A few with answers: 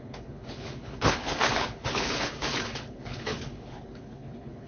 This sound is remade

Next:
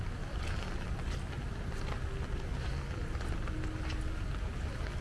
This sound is recorded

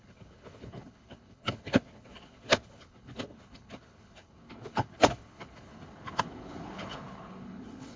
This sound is remade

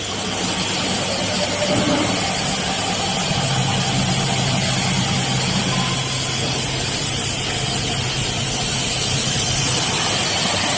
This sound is recorded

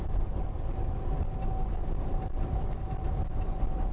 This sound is recorded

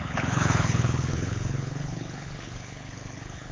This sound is remade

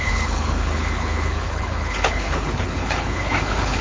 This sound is remade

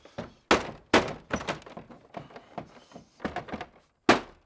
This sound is recorded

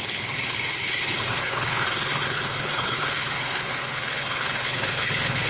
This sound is remade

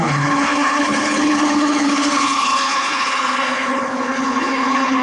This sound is remade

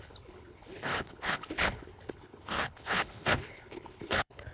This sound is remade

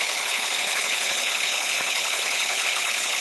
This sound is remade